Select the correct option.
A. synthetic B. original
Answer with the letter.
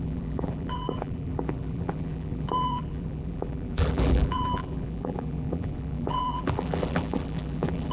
A